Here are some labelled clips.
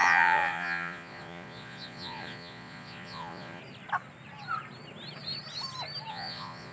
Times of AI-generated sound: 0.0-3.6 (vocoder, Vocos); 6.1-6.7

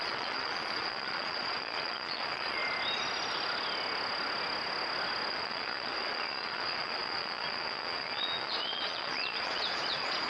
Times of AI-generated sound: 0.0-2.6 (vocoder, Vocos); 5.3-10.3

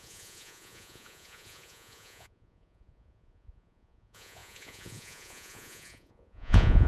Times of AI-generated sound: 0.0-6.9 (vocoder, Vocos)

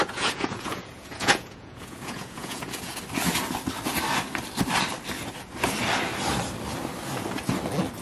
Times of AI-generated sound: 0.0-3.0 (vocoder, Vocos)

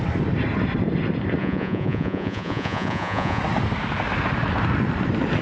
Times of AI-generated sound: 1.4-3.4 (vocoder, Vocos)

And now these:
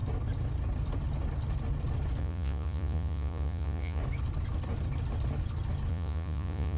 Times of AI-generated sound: 2.2-4.0 (vocoder, Vocos); 5.9-6.8